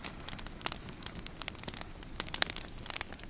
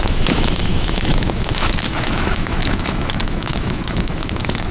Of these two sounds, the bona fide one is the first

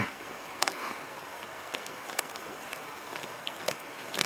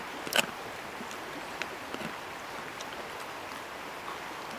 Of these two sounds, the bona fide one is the second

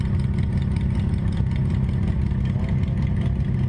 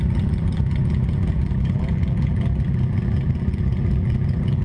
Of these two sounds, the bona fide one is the first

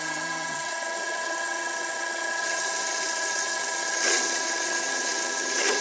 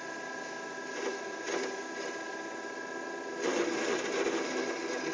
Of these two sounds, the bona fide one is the second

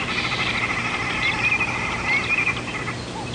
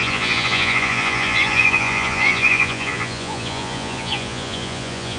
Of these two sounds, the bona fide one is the first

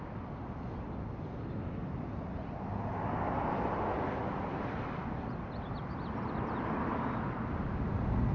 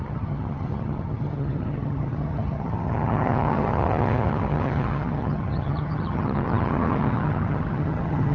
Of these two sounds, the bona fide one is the first